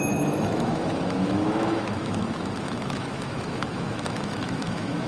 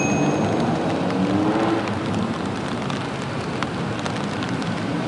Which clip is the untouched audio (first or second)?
second